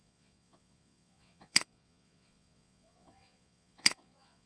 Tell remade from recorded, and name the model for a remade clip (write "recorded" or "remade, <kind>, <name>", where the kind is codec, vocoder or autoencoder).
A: remade, vocoder, Vocos